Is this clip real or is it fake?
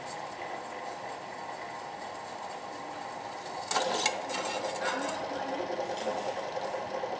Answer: real